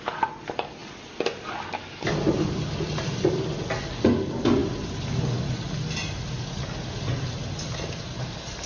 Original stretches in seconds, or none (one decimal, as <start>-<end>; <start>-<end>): 0.0-8.7